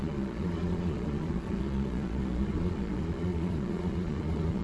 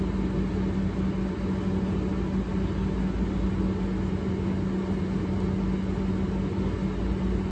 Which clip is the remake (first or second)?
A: first